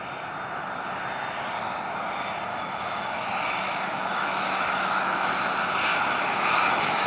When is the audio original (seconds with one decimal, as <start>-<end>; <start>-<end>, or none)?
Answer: 0.0-2.5; 5.3-5.9